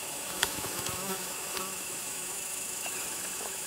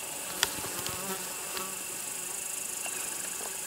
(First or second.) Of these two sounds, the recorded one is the second